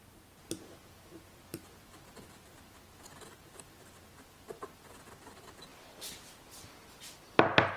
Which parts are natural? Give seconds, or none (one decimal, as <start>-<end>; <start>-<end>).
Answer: 0.0-7.8